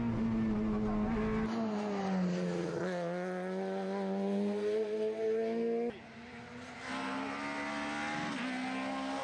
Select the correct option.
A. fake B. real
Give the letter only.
B